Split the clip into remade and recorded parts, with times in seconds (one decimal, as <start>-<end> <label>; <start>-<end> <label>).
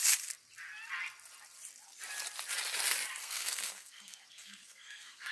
0.0-3.2 recorded; 3.2-5.3 remade